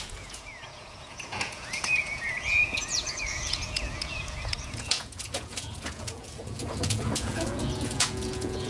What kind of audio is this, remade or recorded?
remade